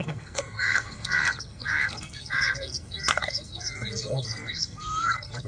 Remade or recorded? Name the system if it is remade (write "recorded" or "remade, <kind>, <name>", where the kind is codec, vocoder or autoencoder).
remade, codec, SNAC